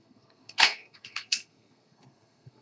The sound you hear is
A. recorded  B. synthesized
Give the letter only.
B